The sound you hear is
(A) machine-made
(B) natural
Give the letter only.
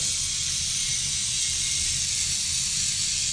B